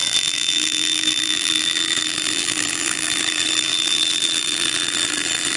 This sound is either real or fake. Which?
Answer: fake